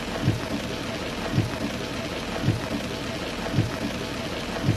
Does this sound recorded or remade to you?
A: recorded